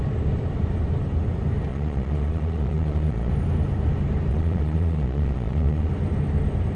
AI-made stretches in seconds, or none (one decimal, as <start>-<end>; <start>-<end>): 1.7-3.3; 4.3-5.9